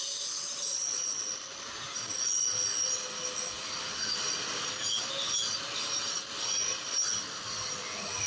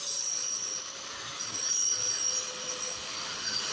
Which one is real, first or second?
first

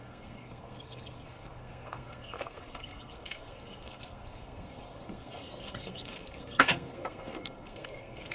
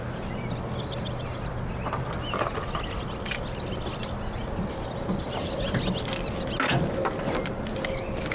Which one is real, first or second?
second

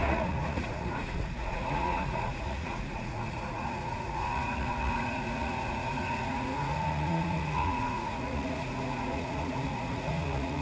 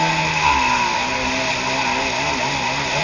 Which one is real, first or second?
second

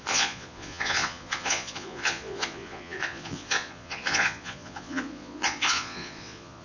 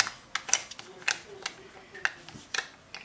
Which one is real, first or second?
second